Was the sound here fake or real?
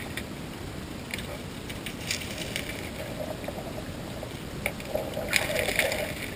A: fake